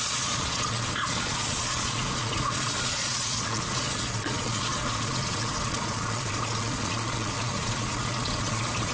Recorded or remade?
remade